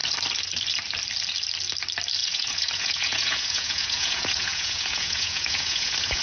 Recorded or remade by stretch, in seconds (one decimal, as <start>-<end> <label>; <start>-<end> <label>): 0.0-2.2 recorded; 2.2-6.2 remade